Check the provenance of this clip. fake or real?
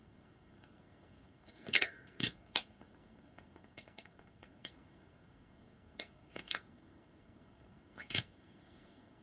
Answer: fake